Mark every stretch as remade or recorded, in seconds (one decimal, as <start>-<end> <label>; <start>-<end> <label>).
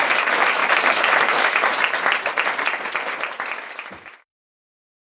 0.0-0.6 remade; 0.6-1.2 recorded; 1.2-1.7 remade; 1.7-3.6 recorded; 3.6-5.0 remade